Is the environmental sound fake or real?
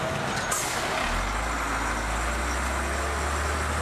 real